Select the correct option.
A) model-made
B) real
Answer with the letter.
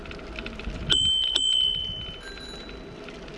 B